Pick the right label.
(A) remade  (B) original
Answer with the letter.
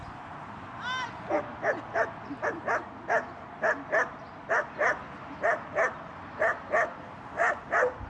B